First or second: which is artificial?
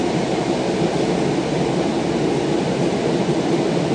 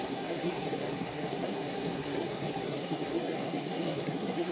second